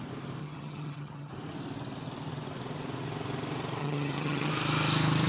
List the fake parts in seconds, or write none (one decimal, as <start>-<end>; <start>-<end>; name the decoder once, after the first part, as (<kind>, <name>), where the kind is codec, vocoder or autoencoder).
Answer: 0.4-1.3 (vocoder, HiFi-GAN); 3.8-4.5